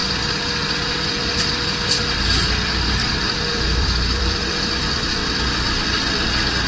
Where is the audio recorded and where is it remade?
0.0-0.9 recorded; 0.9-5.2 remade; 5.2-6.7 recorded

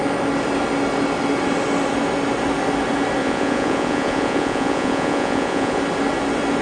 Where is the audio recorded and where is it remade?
0.0-3.2 recorded; 3.2-5.8 remade; 5.8-6.6 recorded

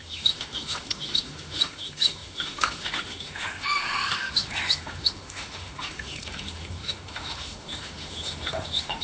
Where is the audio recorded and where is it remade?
0.0-9.0 remade